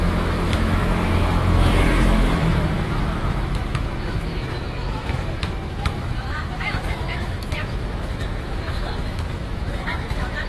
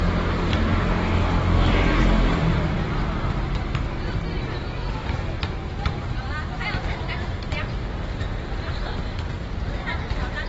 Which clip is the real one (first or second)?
second